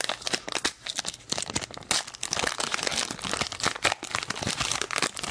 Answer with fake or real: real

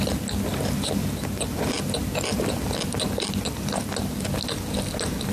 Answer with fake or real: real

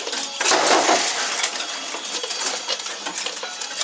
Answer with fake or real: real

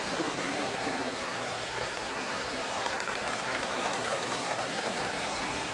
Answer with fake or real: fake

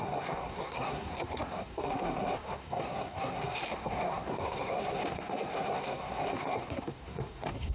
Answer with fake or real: fake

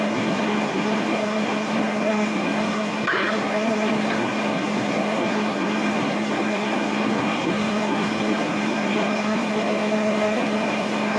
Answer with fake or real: fake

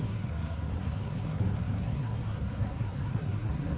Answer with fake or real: fake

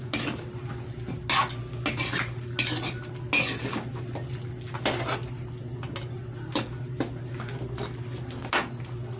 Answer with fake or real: real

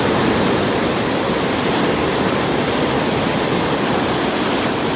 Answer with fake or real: real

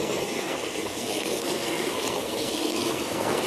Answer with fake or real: fake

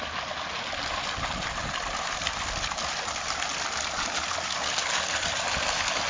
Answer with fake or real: real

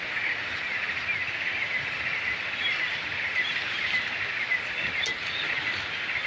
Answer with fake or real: real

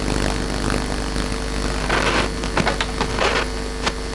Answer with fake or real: real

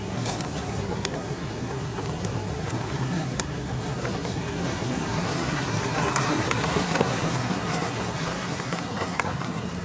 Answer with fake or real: fake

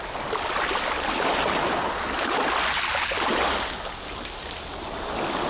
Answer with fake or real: real